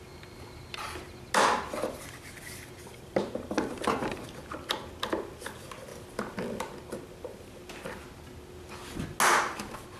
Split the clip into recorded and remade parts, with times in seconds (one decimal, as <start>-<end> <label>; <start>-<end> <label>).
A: 0.0-10.0 recorded